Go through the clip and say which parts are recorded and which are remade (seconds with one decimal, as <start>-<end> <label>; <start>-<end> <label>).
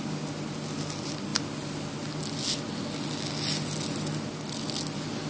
0.0-5.3 recorded